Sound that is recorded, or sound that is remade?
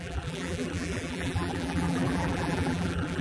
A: remade